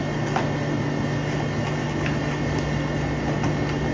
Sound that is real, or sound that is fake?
real